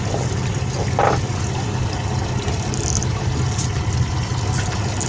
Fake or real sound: real